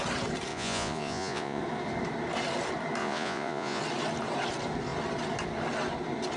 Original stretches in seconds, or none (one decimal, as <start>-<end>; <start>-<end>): 0.0-0.5; 1.6-3.0; 3.8-6.4